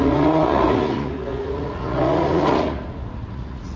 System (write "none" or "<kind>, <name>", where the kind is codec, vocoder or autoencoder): vocoder, Vocos